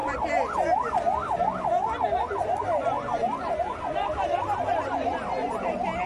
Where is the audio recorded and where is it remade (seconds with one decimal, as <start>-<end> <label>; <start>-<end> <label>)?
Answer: 0.0-6.1 recorded